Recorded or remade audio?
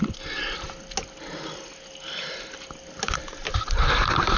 recorded